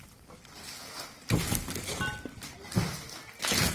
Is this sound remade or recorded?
recorded